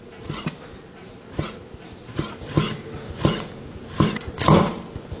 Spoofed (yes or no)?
no